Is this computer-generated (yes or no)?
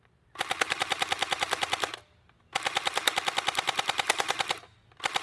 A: no